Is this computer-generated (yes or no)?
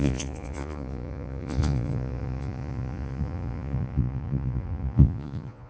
yes